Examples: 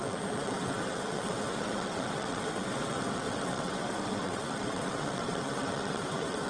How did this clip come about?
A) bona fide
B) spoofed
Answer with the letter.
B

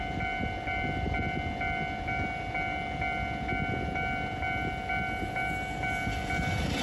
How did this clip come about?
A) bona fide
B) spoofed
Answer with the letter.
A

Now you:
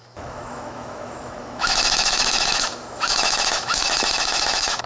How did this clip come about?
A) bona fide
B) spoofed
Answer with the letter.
B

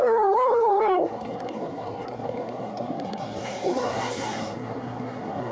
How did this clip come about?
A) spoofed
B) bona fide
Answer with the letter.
A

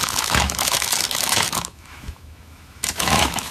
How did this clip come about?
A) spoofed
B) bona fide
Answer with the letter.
A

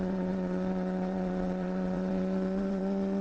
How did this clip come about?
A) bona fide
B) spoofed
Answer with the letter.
B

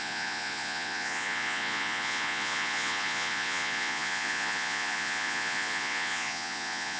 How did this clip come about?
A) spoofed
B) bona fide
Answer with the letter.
A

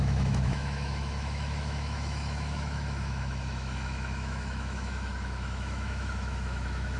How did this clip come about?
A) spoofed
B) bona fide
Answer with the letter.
A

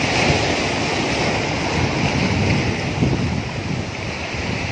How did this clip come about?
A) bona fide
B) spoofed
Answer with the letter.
A